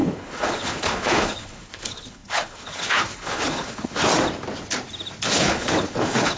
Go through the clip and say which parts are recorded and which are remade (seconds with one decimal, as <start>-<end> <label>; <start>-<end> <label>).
0.0-4.1 remade; 4.1-5.3 recorded; 5.3-6.4 remade